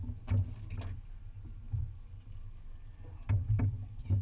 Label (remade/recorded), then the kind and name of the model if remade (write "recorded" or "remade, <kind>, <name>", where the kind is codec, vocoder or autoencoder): recorded